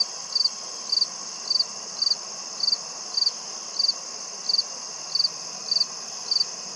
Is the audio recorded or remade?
recorded